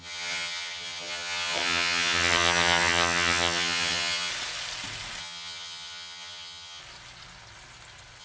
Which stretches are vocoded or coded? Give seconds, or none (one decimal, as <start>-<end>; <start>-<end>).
0.0-4.3; 5.2-6.8